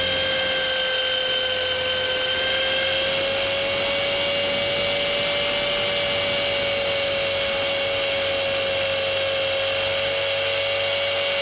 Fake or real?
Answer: real